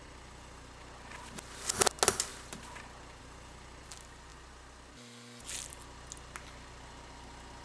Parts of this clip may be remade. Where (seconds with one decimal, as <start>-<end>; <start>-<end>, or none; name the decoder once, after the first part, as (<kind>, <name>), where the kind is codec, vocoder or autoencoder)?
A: 2.3-3.2 (vocoder, BigVGAN v2)